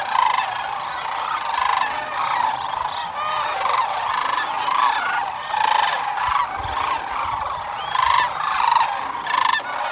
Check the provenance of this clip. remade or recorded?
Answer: recorded